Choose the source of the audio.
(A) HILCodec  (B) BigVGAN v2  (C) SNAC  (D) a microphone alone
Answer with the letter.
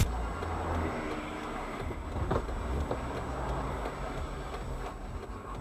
D